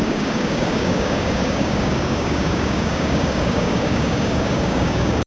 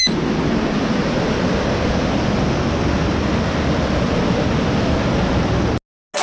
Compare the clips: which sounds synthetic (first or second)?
first